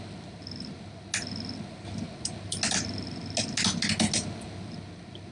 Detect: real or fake real